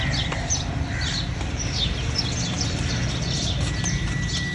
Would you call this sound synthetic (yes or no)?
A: no